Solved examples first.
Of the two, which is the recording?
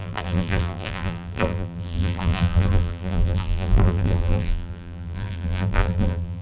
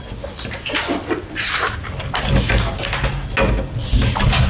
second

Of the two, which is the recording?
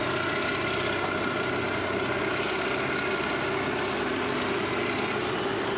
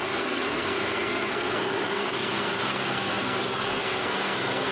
first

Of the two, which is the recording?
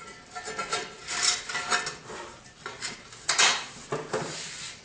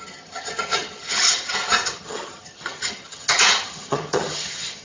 first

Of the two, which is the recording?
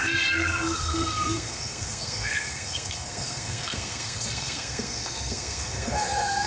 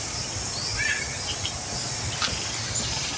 second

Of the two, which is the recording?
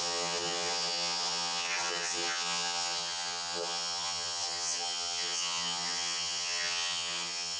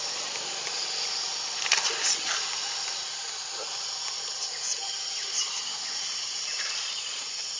second